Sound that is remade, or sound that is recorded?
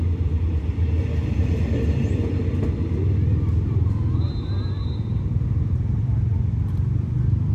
recorded